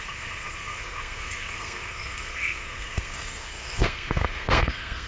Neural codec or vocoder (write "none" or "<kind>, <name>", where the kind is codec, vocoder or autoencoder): codec, SNAC